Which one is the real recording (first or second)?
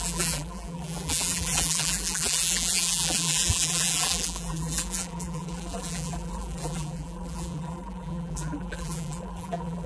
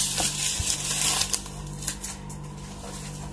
second